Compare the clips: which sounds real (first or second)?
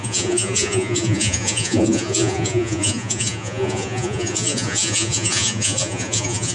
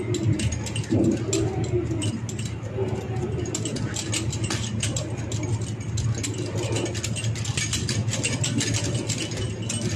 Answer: second